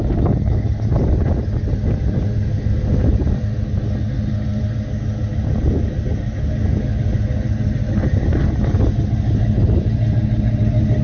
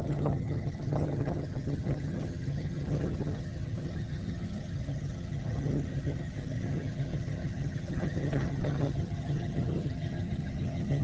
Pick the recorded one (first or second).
first